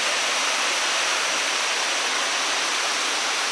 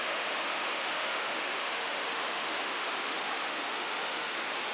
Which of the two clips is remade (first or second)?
second